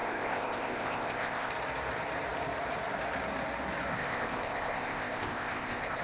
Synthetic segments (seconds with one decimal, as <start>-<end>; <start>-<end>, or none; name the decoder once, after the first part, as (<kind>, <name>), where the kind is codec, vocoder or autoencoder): 0.0-1.5 (codec, ZipCodec); 3.9-6.0